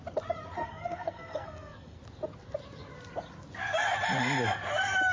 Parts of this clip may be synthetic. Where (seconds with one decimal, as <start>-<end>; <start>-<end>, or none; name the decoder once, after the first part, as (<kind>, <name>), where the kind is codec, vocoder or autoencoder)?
0.6-2.0 (codec, SNAC)